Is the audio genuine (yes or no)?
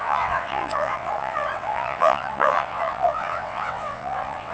no